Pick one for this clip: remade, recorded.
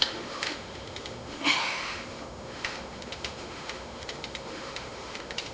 remade